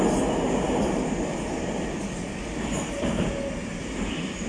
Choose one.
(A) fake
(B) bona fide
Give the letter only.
B